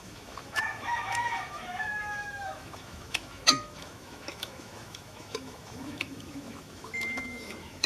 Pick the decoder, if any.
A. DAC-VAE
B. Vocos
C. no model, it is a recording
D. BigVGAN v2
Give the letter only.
A